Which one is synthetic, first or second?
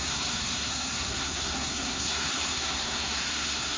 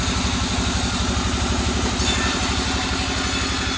first